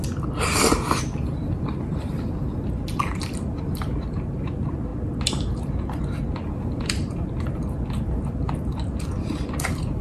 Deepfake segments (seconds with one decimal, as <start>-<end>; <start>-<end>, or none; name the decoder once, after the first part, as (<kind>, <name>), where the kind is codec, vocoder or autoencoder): 0.7-4.9 (vocoder, BigVGAN v2); 6.0-10.0